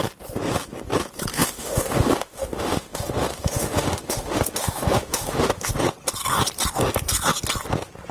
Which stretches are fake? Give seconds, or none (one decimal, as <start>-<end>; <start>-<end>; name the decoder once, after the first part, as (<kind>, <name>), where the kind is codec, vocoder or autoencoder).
1.3-5.7 (autoencoder, DAC-VAE)